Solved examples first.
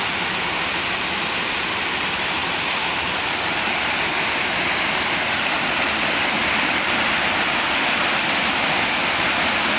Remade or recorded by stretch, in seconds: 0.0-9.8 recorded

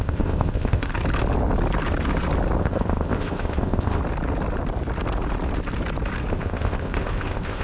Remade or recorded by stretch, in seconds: 0.0-0.9 remade; 0.9-2.6 recorded; 2.6-4.0 remade; 4.0-6.3 recorded; 6.3-7.6 remade

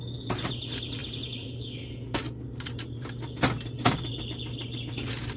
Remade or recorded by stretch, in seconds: 0.0-5.4 recorded

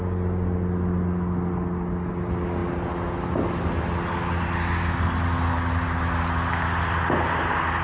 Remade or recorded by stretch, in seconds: 0.0-7.8 recorded